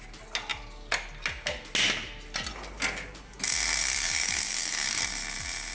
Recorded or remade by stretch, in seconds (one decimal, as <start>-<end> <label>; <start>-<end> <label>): 0.0-3.8 recorded; 3.8-5.0 remade; 5.0-5.7 recorded